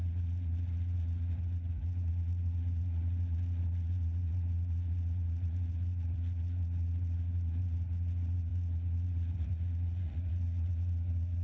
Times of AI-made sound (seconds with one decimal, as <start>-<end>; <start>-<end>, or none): 0.0-11.4